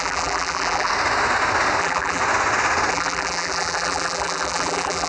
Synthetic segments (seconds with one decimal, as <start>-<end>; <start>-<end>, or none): 0.0-0.9; 1.8-2.2; 2.9-5.1